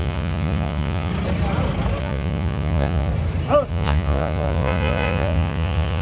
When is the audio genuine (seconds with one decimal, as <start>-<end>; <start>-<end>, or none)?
1.1-2.0; 3.1-3.7